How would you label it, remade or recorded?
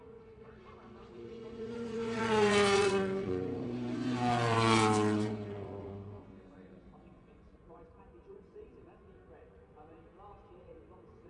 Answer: remade